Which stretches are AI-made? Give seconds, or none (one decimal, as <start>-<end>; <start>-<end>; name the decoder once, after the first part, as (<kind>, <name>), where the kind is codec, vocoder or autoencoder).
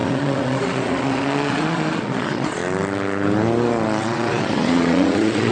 0.0-2.6 (vocoder, Vocos); 4.0-5.5